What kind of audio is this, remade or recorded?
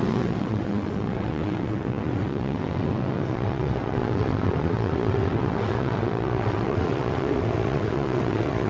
remade